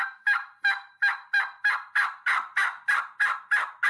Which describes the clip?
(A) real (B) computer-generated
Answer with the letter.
A